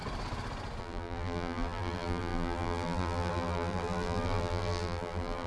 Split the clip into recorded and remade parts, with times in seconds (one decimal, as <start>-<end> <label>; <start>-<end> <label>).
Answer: 0.0-0.8 recorded; 0.8-5.5 remade